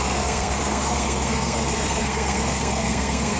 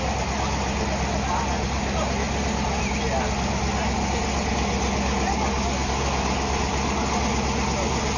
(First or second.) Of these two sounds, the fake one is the first